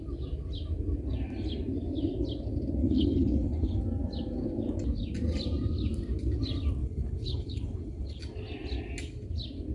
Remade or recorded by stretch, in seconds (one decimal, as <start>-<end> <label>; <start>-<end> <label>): 0.0-2.8 recorded; 2.8-3.8 remade; 3.8-6.8 recorded; 6.8-8.2 remade; 8.2-9.7 recorded